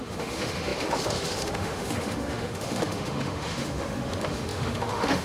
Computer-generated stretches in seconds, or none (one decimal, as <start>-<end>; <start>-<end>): 0.0-5.2